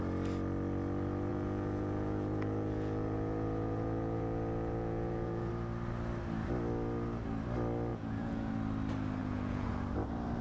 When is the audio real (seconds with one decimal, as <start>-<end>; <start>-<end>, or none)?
0.0-1.3; 5.5-7.9; 8.5-9.2; 9.7-10.4